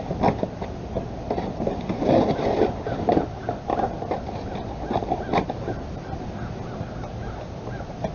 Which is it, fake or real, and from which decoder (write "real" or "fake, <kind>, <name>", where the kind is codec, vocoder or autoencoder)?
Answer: real